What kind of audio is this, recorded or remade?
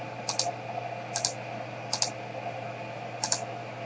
recorded